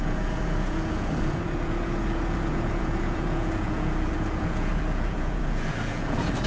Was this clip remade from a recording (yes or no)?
yes